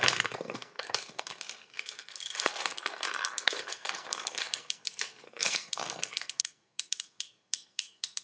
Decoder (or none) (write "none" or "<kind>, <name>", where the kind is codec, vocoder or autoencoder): codec, SNAC